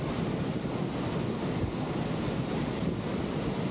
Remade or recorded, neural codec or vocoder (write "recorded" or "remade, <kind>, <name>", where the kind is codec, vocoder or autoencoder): recorded